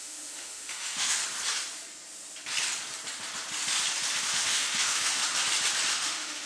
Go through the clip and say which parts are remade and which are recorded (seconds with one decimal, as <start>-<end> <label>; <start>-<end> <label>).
0.0-1.2 remade; 1.2-4.2 recorded; 4.2-5.2 remade; 5.2-5.9 recorded; 5.9-6.5 remade